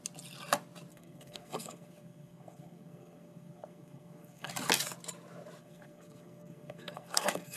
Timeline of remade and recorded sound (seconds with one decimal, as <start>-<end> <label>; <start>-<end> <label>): 0.0-0.9 recorded; 0.9-4.5 remade; 4.5-5.6 recorded; 5.6-7.6 remade